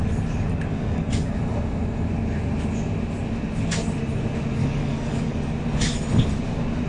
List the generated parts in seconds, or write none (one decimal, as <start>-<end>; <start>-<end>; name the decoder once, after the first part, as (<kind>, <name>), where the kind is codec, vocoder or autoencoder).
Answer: 0.5-1.1 (codec, DAC); 4.6-5.5